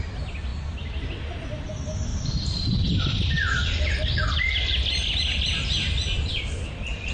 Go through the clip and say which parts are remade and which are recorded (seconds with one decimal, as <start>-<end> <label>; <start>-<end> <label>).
0.0-2.1 recorded; 2.1-6.4 remade; 6.4-7.1 recorded